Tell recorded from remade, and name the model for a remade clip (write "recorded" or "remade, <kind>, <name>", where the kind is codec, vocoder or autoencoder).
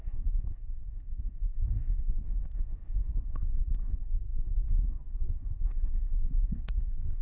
remade, codec, SNAC